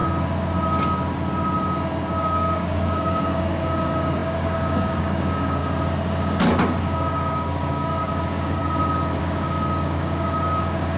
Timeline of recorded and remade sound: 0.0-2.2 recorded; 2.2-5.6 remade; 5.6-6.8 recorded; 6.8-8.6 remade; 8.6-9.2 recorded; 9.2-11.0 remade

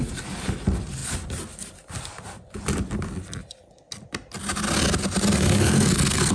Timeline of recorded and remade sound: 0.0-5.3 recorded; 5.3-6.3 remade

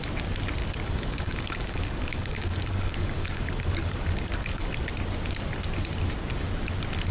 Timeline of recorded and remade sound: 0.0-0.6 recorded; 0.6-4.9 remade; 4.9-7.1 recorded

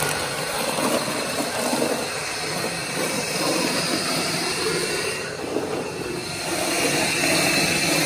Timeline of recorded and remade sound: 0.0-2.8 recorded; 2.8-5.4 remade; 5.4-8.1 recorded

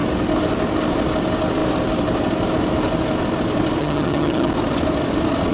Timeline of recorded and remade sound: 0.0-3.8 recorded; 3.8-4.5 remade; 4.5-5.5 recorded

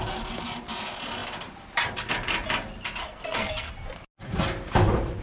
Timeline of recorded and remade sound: 0.0-3.0 recorded; 3.0-3.7 remade; 3.7-5.2 recorded

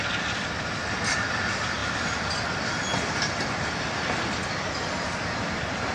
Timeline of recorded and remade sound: 0.0-5.9 recorded